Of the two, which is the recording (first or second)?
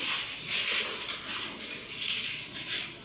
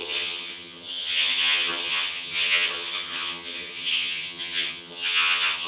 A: first